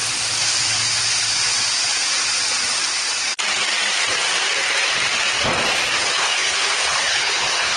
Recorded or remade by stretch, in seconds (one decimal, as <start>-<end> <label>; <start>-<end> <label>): 0.0-6.0 recorded; 6.0-7.8 remade